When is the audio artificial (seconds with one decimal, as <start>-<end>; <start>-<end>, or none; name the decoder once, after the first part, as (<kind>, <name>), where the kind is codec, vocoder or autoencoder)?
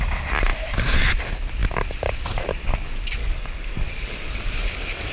3.2-4.3 (codec, DAC)